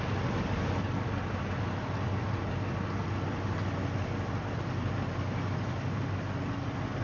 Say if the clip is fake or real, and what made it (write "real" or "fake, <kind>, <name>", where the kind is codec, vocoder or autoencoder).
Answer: real